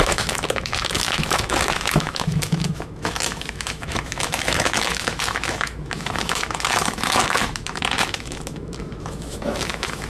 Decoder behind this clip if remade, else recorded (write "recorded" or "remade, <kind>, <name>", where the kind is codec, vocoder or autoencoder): remade, autoencoder, DAC-VAE